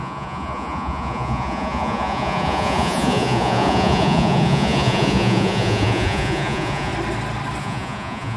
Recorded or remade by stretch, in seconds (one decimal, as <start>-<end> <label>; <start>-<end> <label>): 0.0-6.9 remade; 6.9-7.6 recorded; 7.6-8.4 remade